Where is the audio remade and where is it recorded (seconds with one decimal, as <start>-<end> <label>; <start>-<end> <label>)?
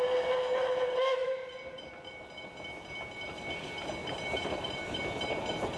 0.0-4.0 recorded; 4.0-5.0 remade; 5.0-5.8 recorded